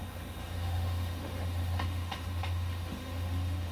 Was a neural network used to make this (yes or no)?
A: yes